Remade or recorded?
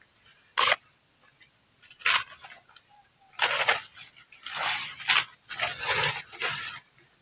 recorded